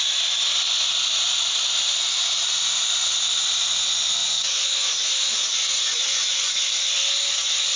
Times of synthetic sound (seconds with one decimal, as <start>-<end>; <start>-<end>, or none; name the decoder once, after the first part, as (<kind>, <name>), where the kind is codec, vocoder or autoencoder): 4.2-4.9 (vocoder, Vocos); 5.6-6.6